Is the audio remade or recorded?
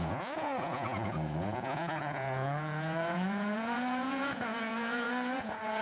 remade